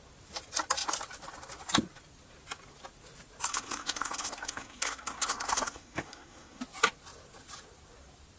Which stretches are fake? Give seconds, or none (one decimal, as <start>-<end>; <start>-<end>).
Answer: 3.5-6.6